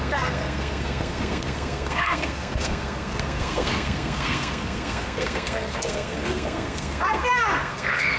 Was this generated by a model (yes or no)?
yes